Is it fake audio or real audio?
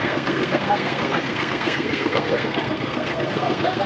fake